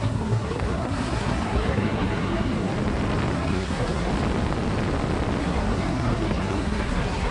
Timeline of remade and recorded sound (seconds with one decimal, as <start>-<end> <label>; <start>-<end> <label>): 0.0-2.7 remade; 2.7-3.3 recorded; 3.3-4.1 remade; 4.1-5.4 recorded; 5.4-7.3 remade